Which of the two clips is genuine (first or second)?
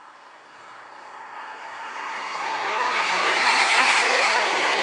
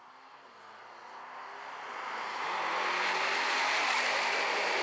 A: second